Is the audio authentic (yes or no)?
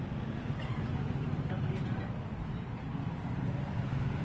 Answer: yes